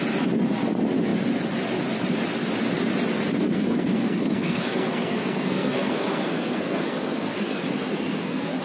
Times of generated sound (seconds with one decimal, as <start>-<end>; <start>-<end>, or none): 3.4-8.6